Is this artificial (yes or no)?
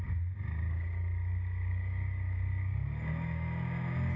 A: yes